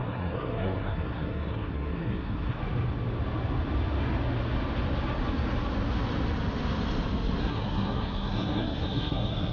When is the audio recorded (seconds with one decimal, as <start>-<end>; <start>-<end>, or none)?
2.6-7.4